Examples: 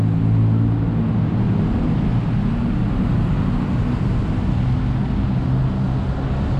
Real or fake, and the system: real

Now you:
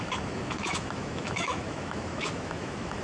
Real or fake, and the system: fake, autoencoder, DAC-VAE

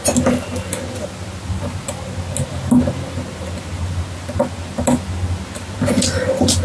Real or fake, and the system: real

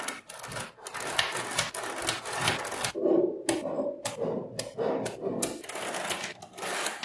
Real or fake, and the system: real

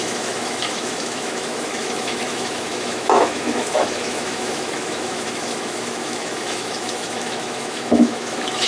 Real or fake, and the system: fake, autoencoder, DAC-VAE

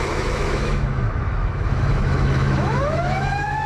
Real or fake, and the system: fake, autoencoder, DAC-VAE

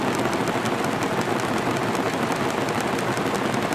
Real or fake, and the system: real